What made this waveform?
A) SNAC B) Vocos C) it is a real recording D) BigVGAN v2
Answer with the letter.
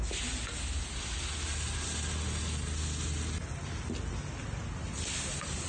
C